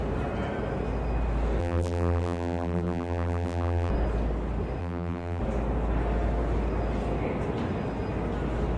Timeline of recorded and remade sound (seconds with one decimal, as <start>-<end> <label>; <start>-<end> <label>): 0.0-1.6 recorded; 1.6-3.9 remade; 3.9-4.8 recorded; 4.8-5.4 remade; 5.4-8.8 recorded